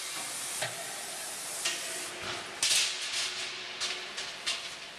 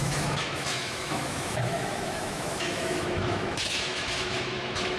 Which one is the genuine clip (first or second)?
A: first